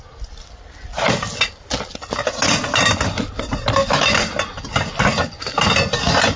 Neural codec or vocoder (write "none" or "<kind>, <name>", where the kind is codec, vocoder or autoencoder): none